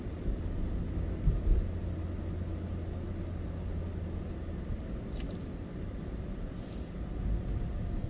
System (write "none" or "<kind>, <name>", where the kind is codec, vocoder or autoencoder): none